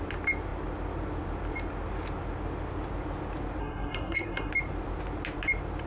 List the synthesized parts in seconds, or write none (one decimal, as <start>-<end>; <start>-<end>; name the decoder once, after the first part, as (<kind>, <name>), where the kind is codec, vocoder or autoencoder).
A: 3.6-4.5 (codec, SNAC)